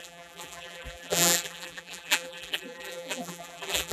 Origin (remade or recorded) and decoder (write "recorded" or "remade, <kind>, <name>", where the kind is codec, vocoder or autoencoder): remade, vocoder, BigVGAN v2